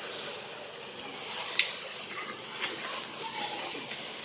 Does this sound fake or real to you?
real